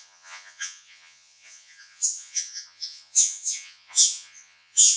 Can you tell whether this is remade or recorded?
remade